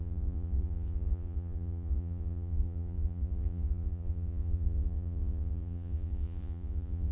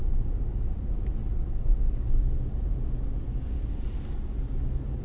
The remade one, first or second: first